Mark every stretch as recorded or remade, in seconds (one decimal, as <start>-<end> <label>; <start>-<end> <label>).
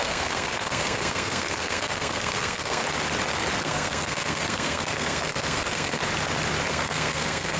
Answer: 0.0-2.8 remade; 2.8-3.6 recorded; 3.6-6.0 remade; 6.0-6.7 recorded; 6.7-7.6 remade